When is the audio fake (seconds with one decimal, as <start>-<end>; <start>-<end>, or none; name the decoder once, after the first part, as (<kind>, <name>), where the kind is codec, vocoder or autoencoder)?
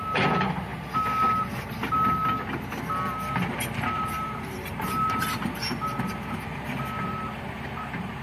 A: 0.0-0.7 (vocoder, BigVGAN v2); 3.3-8.2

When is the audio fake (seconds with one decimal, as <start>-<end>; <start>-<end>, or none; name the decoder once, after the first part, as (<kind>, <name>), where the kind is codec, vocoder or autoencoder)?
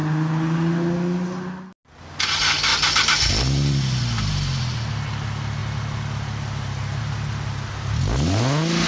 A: none